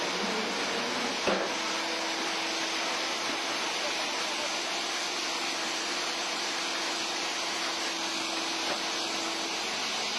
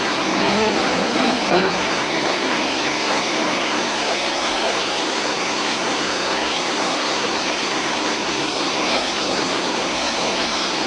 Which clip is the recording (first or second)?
first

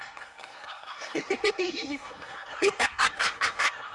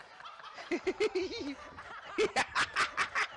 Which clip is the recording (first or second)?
second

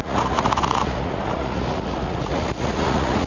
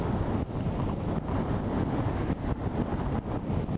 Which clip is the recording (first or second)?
second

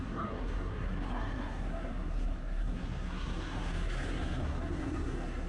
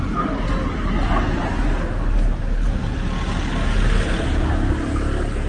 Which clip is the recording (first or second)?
second